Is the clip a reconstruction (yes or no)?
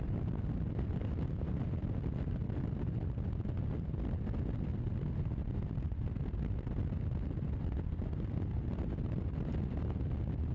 no